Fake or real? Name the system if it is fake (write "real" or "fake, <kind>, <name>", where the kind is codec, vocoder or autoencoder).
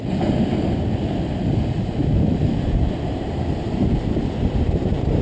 fake, vocoder, BigVGAN v2